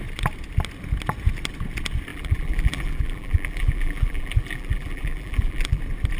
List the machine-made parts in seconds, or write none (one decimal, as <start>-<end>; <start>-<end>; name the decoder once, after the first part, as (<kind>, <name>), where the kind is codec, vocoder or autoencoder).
2.1-5.8 (vocoder, BigVGAN v2)